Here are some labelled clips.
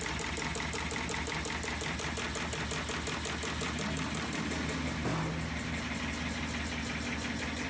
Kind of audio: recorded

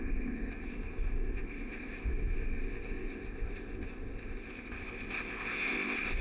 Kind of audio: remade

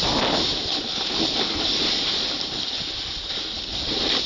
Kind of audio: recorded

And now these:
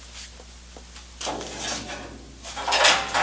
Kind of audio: recorded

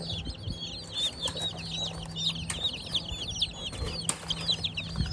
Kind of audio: recorded